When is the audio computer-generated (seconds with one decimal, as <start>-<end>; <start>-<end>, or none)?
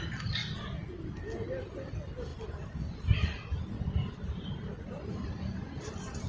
none